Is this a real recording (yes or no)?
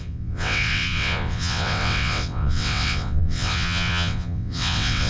no